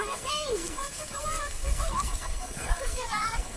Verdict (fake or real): fake